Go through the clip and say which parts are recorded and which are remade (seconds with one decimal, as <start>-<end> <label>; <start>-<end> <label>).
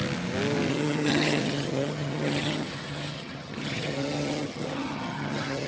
0.0-0.7 recorded; 0.7-5.7 remade